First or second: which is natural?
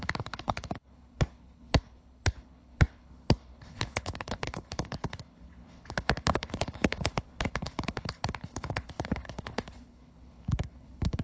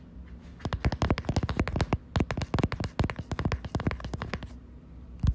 second